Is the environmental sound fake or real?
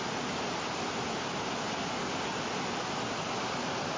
real